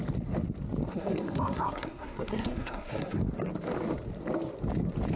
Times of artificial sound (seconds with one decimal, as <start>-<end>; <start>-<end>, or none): 0.9-3.2

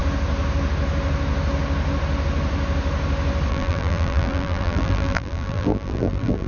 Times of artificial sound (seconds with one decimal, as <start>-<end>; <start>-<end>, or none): 3.5-6.5